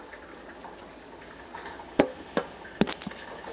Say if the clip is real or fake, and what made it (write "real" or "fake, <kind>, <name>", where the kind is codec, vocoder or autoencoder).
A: real